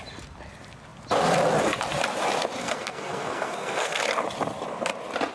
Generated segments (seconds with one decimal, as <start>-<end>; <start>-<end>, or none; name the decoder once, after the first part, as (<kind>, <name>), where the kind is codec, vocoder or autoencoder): 2.6-4.0 (codec, SNAC)